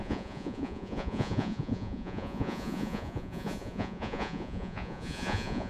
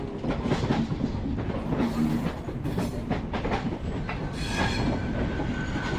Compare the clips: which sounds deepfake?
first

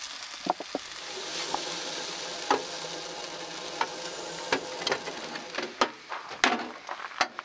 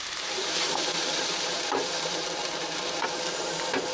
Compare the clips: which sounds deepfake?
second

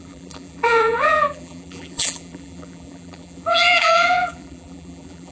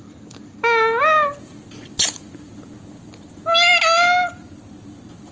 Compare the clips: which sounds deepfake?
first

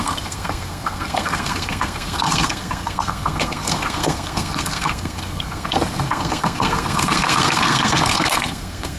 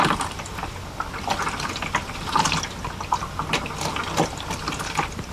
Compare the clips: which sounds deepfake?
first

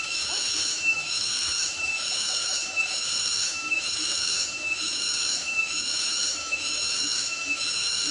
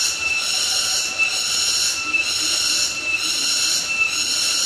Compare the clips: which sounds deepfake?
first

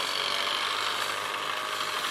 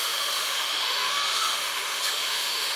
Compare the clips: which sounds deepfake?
second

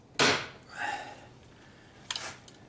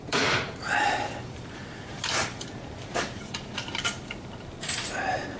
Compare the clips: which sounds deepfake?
second